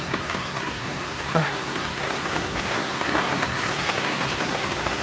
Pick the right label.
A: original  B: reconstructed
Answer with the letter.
B